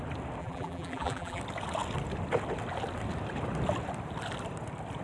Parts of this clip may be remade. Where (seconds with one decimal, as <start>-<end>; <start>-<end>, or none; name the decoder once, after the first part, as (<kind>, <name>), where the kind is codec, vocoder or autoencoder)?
0.4-1.4 (vocoder, BigVGAN v2)